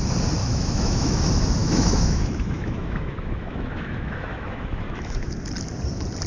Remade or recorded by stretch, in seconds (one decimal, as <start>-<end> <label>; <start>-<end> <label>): 0.0-0.4 recorded; 0.4-1.2 remade; 1.2-1.6 recorded; 1.6-5.3 remade; 5.3-6.3 recorded

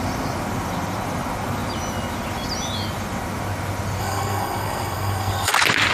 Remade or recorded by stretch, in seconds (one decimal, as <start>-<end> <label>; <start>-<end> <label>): 0.0-4.0 recorded; 4.0-5.5 remade; 5.5-5.9 recorded

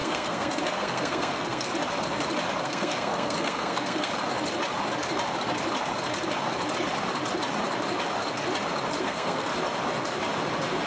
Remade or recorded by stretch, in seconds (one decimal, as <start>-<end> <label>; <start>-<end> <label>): 0.0-1.7 remade; 1.7-2.6 recorded; 2.6-4.1 remade; 4.1-9.0 recorded; 9.0-9.5 remade; 9.5-10.9 recorded